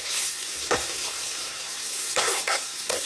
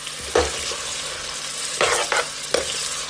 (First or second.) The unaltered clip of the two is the second